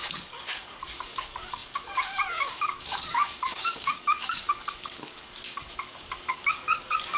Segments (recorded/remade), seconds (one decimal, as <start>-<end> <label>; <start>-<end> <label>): 0.0-7.2 remade